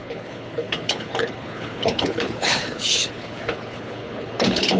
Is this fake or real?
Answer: fake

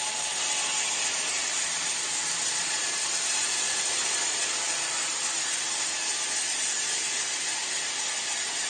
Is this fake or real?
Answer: real